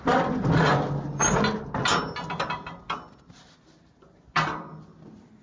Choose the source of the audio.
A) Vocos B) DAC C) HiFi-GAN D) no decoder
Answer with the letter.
D